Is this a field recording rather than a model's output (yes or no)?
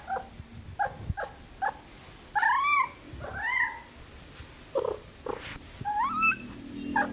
yes